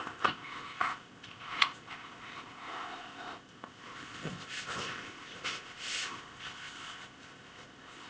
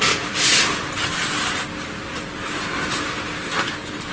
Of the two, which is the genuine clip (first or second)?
second